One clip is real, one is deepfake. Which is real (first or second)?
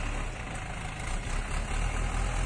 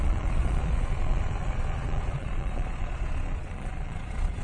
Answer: first